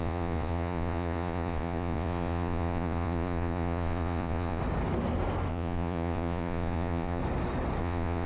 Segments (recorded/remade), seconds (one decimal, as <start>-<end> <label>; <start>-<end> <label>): 0.0-4.6 remade; 4.6-5.5 recorded; 5.5-7.2 remade; 7.2-7.8 recorded; 7.8-8.3 remade